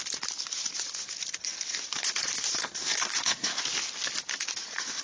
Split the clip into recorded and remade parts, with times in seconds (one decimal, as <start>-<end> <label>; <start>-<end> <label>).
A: 0.0-2.6 recorded; 2.6-3.6 remade; 3.6-5.0 recorded